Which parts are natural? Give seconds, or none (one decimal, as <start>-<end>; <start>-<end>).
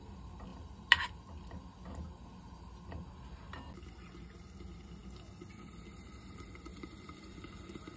0.5-3.7; 5.0-5.5